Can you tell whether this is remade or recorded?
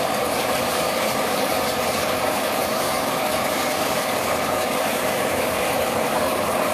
remade